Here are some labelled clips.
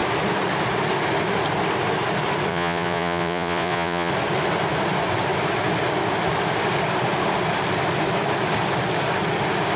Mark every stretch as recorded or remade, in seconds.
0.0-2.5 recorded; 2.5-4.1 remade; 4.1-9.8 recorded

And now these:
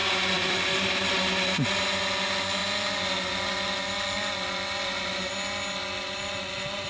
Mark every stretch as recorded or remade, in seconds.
0.0-1.9 remade; 1.9-6.9 recorded

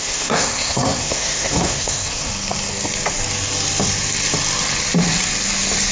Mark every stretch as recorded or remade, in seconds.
0.0-2.3 remade; 2.3-5.9 recorded

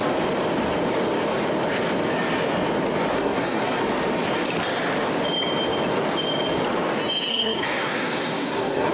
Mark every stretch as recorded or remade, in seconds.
0.0-3.1 recorded; 3.1-3.8 remade; 3.8-7.3 recorded; 7.3-8.9 remade

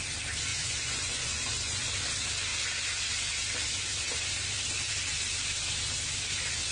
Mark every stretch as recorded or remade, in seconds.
0.0-0.5 recorded; 0.5-1.8 remade; 1.8-6.7 recorded

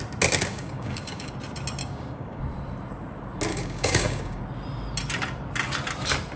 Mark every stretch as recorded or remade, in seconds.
0.0-0.5 recorded; 0.5-1.3 remade; 1.3-1.8 recorded; 1.8-2.4 remade; 2.4-3.5 recorded; 3.5-4.4 remade; 4.4-6.4 recorded

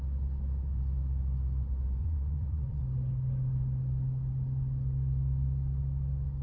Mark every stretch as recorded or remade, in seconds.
0.0-2.0 recorded; 2.0-2.8 remade; 2.8-6.4 recorded